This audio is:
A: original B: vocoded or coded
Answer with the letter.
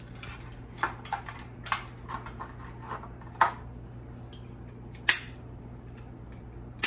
A